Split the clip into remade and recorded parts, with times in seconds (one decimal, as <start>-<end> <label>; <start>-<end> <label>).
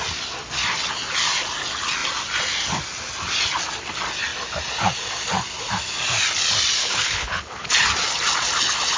0.0-6.8 recorded; 6.8-7.6 remade; 7.6-9.0 recorded